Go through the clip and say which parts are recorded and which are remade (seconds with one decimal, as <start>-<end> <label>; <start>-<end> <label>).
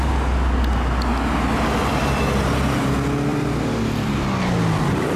0.0-3.3 recorded; 3.3-4.1 remade; 4.1-5.2 recorded